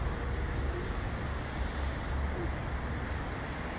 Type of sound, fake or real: real